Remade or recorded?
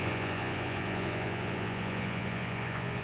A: remade